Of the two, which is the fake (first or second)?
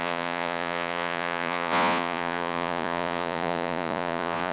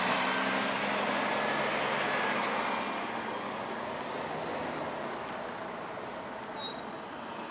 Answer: first